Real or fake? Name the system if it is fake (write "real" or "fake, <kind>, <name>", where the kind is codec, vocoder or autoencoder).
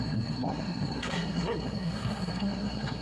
fake, codec, SNAC